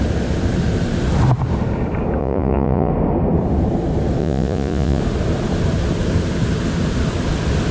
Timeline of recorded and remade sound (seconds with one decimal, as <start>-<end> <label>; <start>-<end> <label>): 0.0-2.2 recorded; 2.2-2.9 remade; 2.9-4.2 recorded; 4.2-5.0 remade; 5.0-7.7 recorded